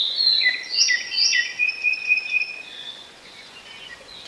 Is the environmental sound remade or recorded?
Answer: remade